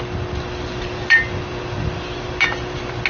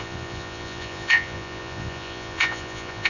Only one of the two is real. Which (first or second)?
first